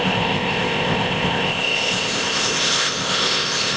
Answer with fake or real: fake